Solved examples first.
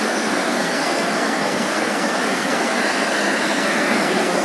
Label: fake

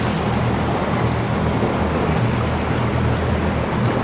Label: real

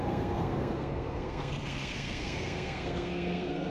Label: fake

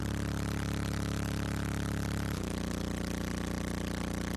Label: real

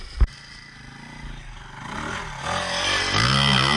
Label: real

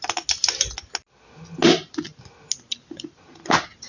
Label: real